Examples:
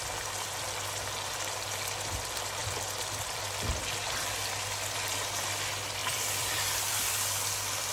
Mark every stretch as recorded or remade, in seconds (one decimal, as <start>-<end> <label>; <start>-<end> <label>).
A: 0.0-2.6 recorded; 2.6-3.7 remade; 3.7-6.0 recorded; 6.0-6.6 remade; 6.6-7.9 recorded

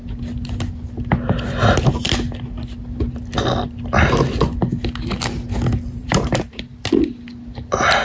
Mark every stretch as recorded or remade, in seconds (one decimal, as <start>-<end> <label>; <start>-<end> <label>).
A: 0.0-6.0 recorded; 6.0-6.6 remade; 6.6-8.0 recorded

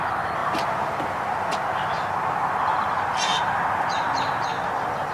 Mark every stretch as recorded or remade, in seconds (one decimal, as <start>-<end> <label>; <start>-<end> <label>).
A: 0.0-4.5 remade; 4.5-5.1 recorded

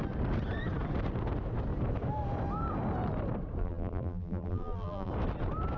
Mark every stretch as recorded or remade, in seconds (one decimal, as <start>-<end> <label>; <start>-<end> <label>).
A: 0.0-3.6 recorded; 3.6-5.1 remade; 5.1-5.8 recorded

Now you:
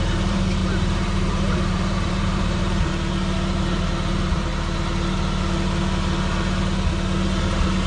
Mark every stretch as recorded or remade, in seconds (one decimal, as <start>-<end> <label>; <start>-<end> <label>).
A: 0.0-2.9 remade; 2.9-3.6 recorded; 3.6-4.5 remade; 4.5-7.9 recorded